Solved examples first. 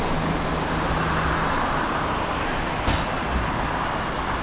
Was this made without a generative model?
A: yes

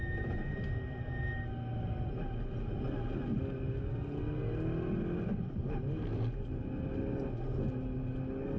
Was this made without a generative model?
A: yes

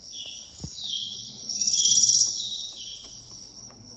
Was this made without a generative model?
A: no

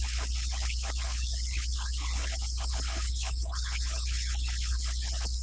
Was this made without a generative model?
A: no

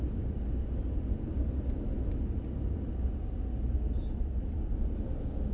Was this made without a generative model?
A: yes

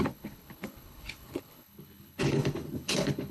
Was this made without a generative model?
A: no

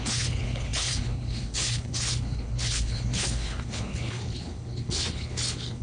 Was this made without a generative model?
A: no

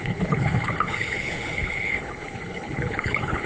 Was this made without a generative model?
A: no